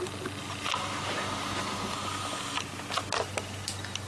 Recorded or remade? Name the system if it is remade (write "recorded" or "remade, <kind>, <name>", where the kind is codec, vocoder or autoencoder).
recorded